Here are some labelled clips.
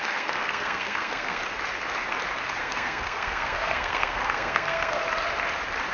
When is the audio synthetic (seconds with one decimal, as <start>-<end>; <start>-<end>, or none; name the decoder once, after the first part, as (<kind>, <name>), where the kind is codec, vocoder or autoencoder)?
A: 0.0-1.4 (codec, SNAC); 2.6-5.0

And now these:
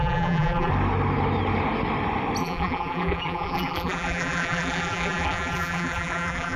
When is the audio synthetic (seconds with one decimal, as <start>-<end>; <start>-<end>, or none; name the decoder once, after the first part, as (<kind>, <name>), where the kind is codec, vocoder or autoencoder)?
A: 0.0-0.7 (vocoder, BigVGAN v2); 2.4-6.6

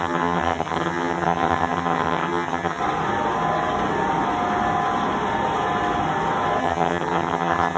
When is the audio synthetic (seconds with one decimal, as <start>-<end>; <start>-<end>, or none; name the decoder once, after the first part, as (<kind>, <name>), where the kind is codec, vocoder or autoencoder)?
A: 0.0-2.8 (vocoder, HiFi-GAN); 6.6-7.8

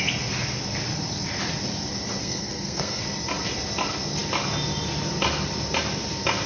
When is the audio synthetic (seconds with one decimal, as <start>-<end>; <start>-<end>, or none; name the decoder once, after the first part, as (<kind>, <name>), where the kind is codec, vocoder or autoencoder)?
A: 2.2-3.0 (codec, SNAC)